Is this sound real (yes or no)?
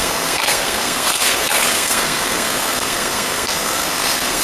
no